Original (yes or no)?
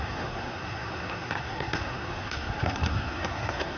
no